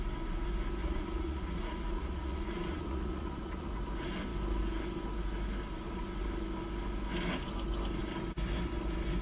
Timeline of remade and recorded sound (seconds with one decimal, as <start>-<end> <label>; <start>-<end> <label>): 0.0-0.8 recorded; 0.8-3.7 remade; 3.7-9.2 recorded